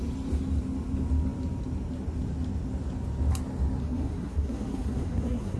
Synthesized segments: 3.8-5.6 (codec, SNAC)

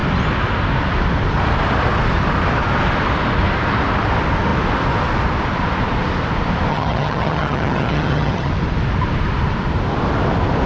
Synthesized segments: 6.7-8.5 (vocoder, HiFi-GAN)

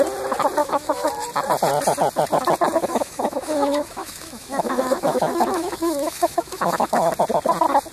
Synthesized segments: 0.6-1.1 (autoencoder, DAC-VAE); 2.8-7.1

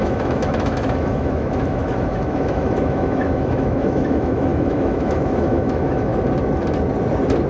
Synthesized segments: 0.0-6.1 (autoencoder, DAC-VAE)

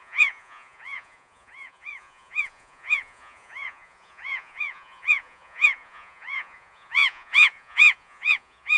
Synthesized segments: 0.0-8.8 (vocoder, Vocos)